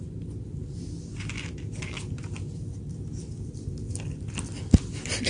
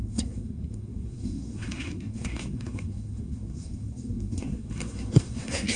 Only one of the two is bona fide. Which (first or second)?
first